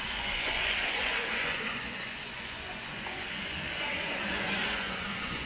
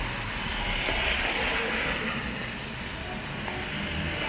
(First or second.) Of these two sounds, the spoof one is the first